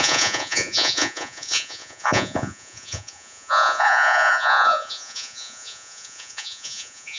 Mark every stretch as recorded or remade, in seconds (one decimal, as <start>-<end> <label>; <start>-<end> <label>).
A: 0.0-7.2 remade